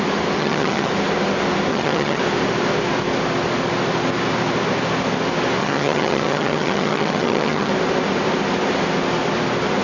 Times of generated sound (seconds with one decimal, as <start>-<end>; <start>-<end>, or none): 0.4-0.9; 1.7-2.2; 5.6-7.7